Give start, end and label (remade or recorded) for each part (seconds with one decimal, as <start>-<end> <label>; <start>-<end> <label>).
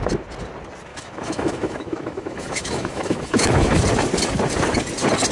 0.0-0.9 recorded; 0.9-3.8 remade; 3.8-5.3 recorded